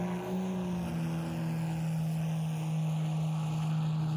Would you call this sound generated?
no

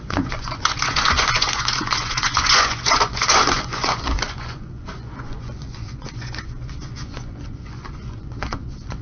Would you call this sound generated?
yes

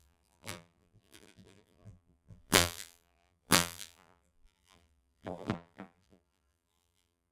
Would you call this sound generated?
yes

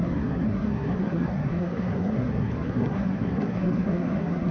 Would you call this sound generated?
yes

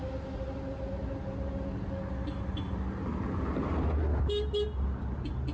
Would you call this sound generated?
no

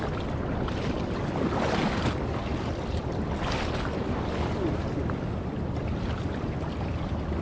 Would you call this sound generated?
no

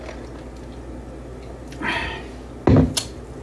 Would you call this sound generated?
no